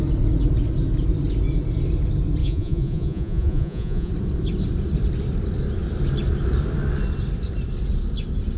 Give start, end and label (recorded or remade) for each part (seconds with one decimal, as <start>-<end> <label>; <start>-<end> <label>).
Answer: 0.0-2.4 recorded; 2.4-4.1 remade; 4.1-8.6 recorded